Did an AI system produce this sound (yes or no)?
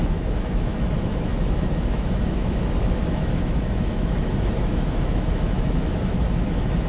yes